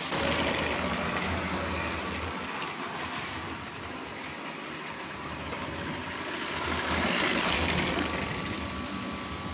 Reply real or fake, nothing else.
real